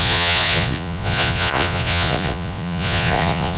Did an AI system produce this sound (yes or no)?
yes